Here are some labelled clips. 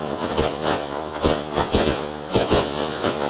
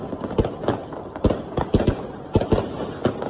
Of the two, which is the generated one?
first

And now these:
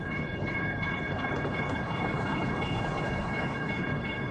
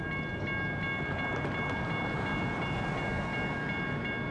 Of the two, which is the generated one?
first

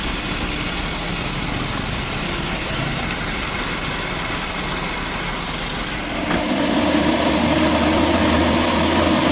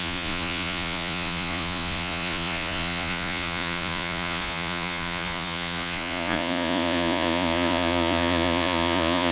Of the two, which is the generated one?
second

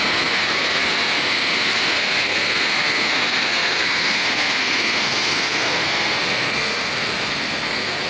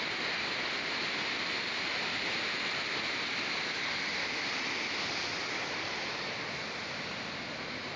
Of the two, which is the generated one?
first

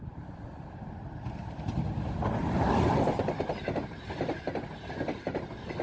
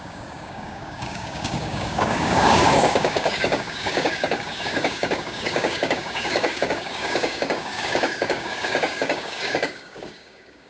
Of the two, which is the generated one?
second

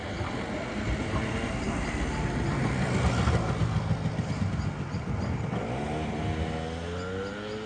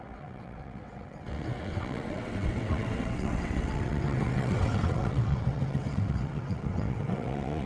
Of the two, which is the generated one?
second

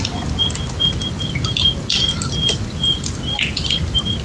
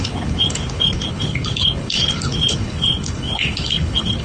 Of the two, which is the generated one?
second